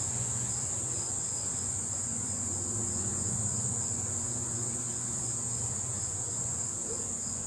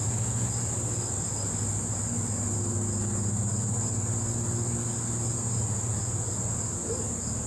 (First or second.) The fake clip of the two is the first